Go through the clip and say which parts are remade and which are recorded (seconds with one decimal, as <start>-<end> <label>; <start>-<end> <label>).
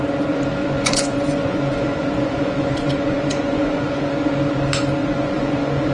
0.0-0.6 recorded; 0.6-4.1 remade; 4.1-5.0 recorded; 5.0-5.9 remade